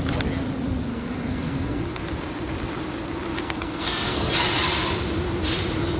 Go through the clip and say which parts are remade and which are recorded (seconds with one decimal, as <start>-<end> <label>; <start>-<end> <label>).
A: 0.0-0.9 recorded; 0.9-1.8 remade; 1.8-3.3 recorded; 3.3-4.3 remade; 4.3-6.0 recorded